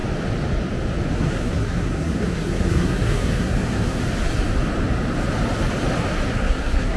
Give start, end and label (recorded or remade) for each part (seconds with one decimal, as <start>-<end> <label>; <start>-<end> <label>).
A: 0.0-1.1 recorded; 1.1-4.0 remade; 4.0-6.3 recorded; 6.3-7.0 remade